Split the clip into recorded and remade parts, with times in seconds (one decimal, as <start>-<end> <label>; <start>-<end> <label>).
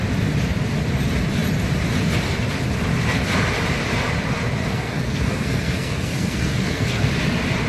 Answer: 0.0-4.6 recorded; 4.6-7.1 remade; 7.1-7.7 recorded